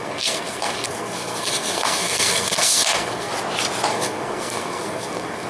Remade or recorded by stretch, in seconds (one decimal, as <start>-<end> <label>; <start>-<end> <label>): 0.0-3.3 remade; 3.3-3.9 recorded; 3.9-5.5 remade